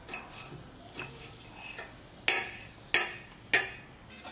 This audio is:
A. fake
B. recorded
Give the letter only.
B